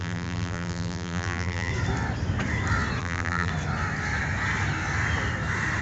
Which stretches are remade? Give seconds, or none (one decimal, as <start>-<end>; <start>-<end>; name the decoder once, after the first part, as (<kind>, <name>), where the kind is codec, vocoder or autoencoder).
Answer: 0.0-1.7 (vocoder, BigVGAN v2); 3.0-3.5